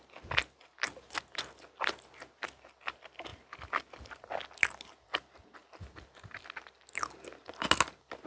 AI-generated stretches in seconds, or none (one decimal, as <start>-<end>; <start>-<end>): none